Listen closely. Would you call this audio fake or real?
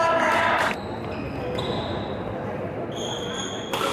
real